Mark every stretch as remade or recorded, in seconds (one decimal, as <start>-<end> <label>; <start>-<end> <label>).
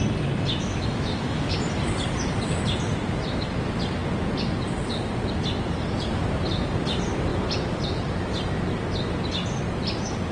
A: 0.0-0.6 recorded; 0.6-1.6 remade; 1.6-10.3 recorded